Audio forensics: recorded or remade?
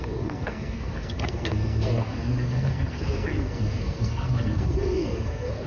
remade